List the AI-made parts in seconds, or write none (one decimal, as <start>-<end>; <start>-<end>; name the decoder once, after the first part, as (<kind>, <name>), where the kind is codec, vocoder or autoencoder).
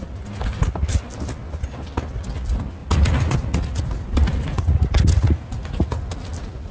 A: 2.8-6.0 (vocoder, Vocos)